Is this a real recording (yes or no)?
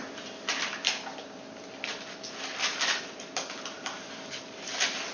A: yes